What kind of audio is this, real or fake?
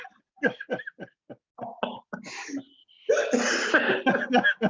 real